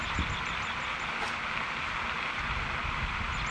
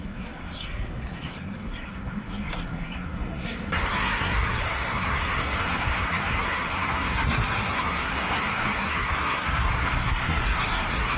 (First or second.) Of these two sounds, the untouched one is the first